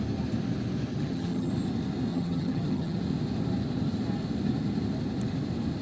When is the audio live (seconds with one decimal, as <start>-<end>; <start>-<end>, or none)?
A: 0.0-0.9; 1.5-2.1; 3.0-5.8